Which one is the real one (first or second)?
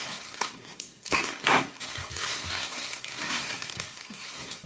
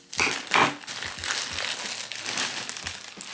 second